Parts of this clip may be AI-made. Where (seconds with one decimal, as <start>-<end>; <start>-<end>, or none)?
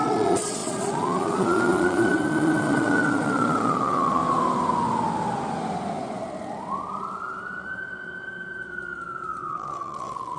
0.0-4.2; 9.5-10.4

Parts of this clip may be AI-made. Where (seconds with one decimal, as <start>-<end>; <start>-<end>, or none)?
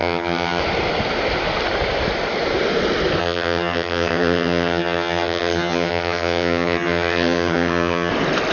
0.0-0.6; 3.2-8.1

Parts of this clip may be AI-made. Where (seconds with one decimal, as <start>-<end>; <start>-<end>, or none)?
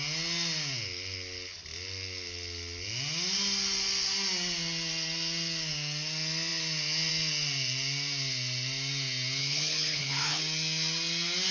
9.4-10.4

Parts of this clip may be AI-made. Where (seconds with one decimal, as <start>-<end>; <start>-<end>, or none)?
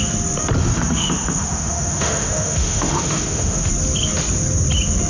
0.6-3.7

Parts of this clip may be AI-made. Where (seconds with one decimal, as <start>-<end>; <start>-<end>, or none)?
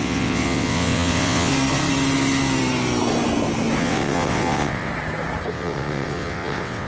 0.0-1.5; 3.8-4.9; 5.5-6.9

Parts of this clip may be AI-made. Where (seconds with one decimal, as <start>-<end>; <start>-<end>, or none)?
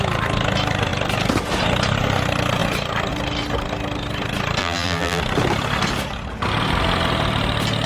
4.6-5.2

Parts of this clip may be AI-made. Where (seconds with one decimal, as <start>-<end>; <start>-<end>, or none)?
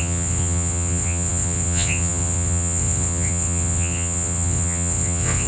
0.0-5.5